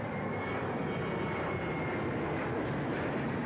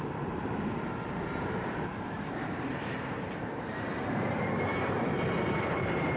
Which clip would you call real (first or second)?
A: first